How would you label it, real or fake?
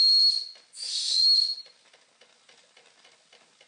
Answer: real